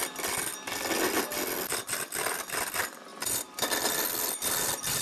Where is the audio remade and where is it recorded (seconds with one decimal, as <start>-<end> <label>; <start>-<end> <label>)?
0.0-0.5 remade; 0.5-2.7 recorded; 2.7-5.0 remade